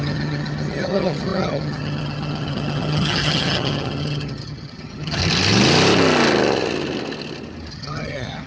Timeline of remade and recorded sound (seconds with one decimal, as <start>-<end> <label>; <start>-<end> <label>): 0.0-5.2 remade; 5.2-7.7 recorded; 7.7-8.5 remade